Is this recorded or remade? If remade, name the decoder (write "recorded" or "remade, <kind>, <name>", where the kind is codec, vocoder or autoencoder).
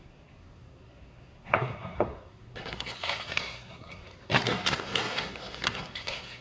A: remade, codec, SNAC